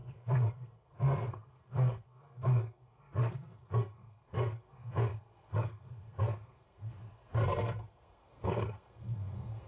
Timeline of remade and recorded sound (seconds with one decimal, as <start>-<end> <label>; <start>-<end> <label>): 0.0-9.7 remade